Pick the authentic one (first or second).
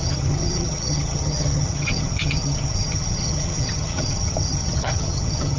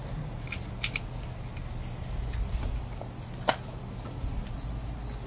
second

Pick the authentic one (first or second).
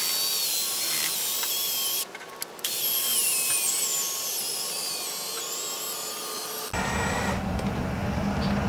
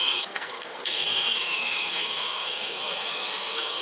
first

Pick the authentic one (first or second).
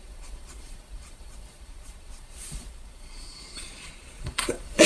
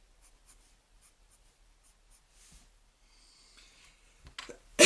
second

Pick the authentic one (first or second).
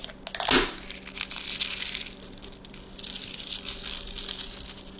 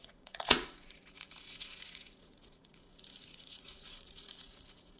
first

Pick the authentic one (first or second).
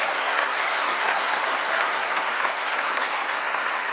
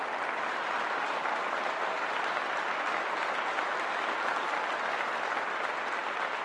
second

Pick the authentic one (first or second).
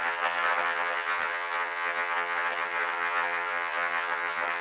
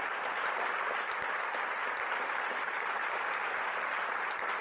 second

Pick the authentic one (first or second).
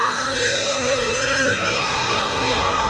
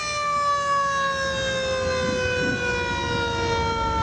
second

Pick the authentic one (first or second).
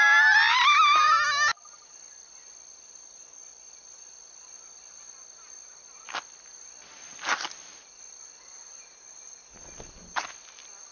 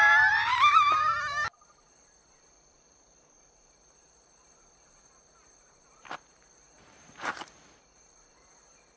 first